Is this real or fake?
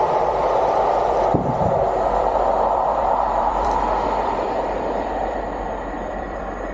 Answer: fake